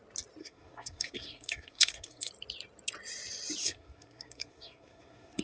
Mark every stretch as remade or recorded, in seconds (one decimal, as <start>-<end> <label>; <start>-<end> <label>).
0.0-0.4 recorded; 0.4-2.3 remade; 2.3-3.6 recorded; 3.6-5.4 remade

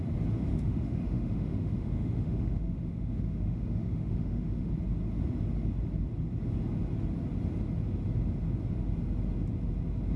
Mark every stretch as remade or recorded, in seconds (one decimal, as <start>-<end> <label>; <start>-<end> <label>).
0.0-0.5 recorded; 0.5-4.7 remade; 4.7-10.2 recorded

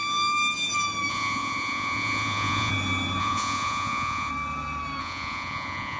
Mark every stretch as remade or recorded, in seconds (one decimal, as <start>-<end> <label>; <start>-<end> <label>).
0.0-1.1 recorded; 1.1-2.7 remade; 2.7-3.2 recorded; 3.2-4.3 remade; 4.3-5.0 recorded; 5.0-6.0 remade

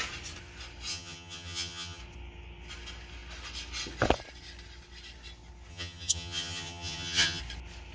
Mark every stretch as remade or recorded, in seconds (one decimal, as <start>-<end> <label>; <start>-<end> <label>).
0.0-0.9 recorded; 0.9-2.0 remade; 2.0-5.7 recorded; 5.7-7.4 remade; 7.4-7.9 recorded

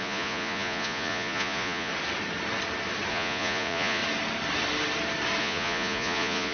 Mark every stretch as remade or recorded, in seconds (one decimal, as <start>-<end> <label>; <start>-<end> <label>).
0.0-1.9 remade; 1.9-3.1 recorded; 3.1-4.0 remade; 4.0-5.4 recorded; 5.4-6.5 remade